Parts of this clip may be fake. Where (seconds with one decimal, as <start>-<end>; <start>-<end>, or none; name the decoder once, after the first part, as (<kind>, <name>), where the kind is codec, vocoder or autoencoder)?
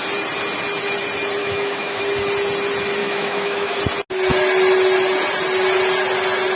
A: 1.4-2.0 (autoencoder, DAC-VAE); 3.0-3.8